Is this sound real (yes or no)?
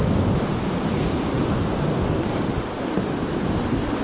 yes